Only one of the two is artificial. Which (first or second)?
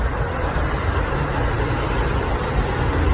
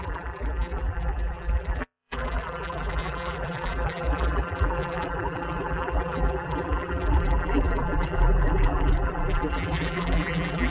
second